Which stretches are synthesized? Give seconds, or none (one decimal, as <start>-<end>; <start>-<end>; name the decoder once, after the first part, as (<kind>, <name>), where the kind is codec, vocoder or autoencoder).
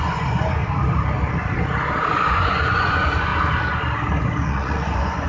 0.0-0.6 (vocoder, Vocos); 2.1-3.3; 4.2-5.3